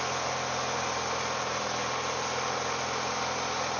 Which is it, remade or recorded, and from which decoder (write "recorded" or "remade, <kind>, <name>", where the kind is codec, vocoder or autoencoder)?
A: recorded